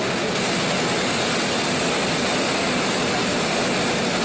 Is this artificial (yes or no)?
no